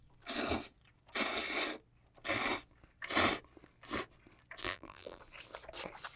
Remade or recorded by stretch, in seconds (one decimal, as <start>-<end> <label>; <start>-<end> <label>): 0.0-4.6 recorded; 4.6-5.2 remade; 5.2-6.2 recorded

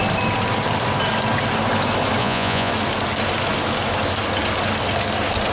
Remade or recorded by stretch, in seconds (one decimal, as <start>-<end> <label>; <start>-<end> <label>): 0.0-2.2 recorded; 2.2-2.7 remade; 2.7-5.5 recorded

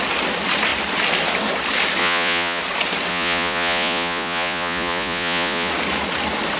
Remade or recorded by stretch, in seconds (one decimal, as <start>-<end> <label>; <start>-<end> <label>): 0.0-2.0 recorded; 2.0-2.6 remade; 2.6-3.1 recorded; 3.1-5.7 remade; 5.7-6.6 recorded

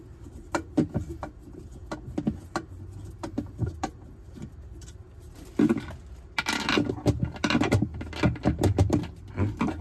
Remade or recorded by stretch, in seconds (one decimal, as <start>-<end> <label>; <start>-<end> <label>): 0.0-9.8 recorded

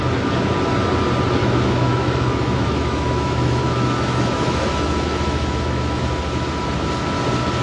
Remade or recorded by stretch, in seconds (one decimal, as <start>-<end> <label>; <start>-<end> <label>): 0.0-1.4 recorded; 1.4-6.0 remade; 6.0-7.6 recorded

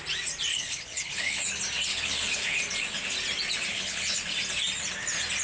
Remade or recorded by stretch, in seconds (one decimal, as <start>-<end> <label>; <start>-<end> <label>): 0.0-0.5 recorded; 0.5-1.4 remade; 1.4-1.9 recorded; 1.9-2.6 remade; 2.6-3.7 recorded; 3.7-4.2 remade; 4.2-5.4 recorded